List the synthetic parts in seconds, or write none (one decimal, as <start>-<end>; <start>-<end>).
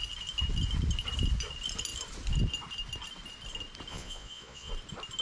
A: 3.9-4.7